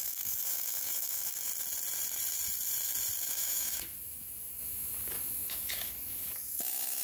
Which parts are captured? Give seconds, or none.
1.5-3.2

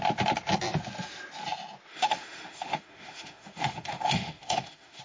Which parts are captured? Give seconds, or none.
0.0-1.9

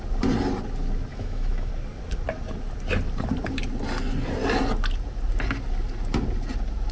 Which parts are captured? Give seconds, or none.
0.0-1.1; 1.7-6.9

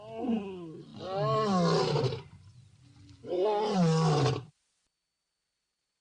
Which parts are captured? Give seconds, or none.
0.0-6.0

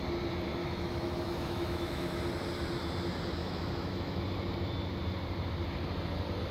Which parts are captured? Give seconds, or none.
0.0-0.6; 2.2-3.4; 4.2-6.5

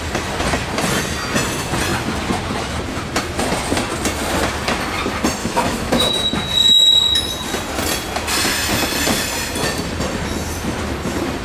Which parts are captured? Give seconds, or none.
0.0-5.4; 6.1-11.4

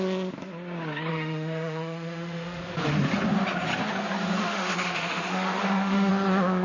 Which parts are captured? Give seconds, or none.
0.0-1.1; 2.6-4.4; 6.1-6.6

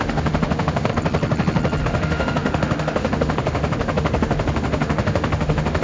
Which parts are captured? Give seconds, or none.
0.9-1.8